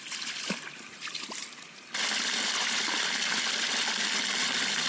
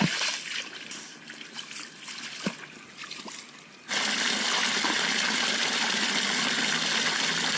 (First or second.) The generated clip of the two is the first